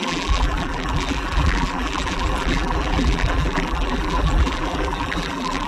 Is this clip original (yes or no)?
no